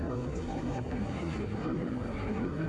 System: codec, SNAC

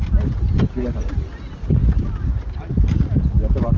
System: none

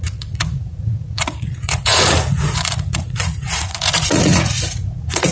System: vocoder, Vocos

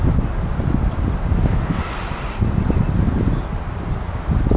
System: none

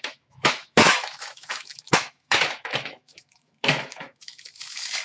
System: autoencoder, DAC-VAE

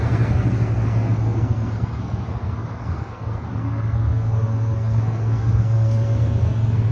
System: codec, SNAC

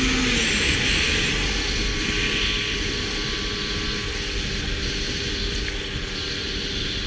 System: none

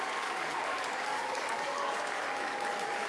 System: codec, DAC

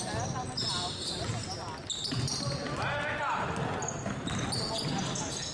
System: none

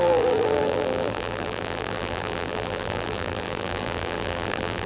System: vocoder, BigVGAN v2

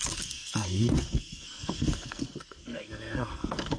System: codec, SNAC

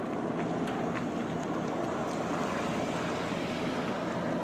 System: none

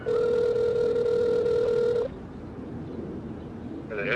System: none